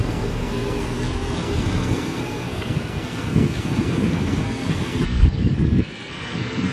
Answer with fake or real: fake